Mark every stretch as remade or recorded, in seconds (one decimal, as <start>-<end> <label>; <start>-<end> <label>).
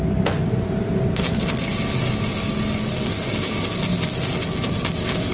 0.0-5.3 recorded